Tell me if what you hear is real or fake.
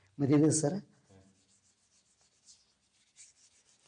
real